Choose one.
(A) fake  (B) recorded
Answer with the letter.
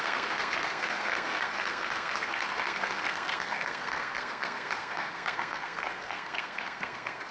A